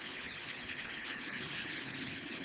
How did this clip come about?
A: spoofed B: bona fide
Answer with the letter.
A